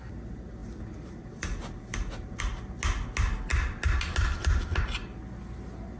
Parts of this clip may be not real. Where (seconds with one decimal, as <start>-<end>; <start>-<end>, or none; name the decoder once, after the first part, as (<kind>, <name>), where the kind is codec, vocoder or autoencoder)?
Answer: none